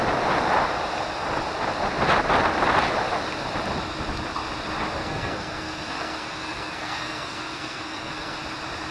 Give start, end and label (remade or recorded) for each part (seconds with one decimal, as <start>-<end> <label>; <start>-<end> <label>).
0.0-5.0 recorded; 5.0-8.4 remade; 8.4-8.9 recorded